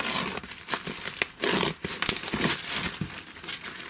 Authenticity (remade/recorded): recorded